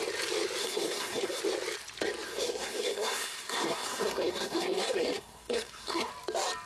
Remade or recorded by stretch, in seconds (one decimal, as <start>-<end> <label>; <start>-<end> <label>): 0.0-0.6 recorded; 0.6-1.4 remade; 1.4-2.3 recorded; 2.3-6.1 remade; 6.1-6.7 recorded